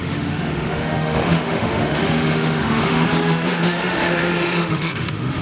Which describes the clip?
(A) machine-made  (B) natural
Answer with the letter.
A